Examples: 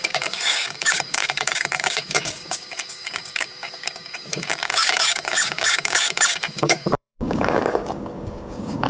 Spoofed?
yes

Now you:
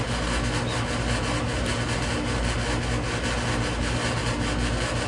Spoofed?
no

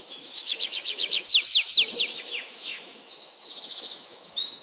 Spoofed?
yes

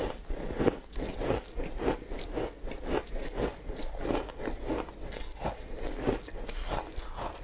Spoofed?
no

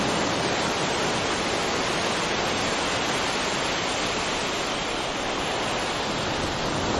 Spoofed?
no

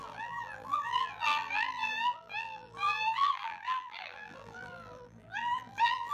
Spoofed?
yes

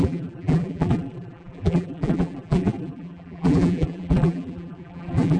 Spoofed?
yes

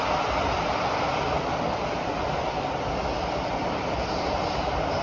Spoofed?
no